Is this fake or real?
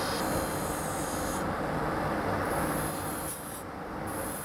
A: real